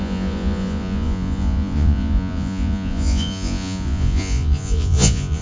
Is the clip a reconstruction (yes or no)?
yes